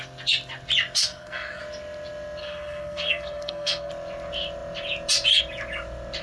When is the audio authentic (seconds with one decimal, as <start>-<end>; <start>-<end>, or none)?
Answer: 0.0-1.0; 1.6-2.4; 3.9-6.2